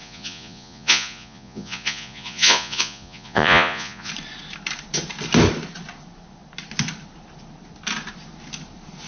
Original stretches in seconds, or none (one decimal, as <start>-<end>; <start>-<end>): 4.1-9.1